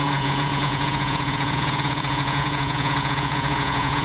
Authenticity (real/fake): fake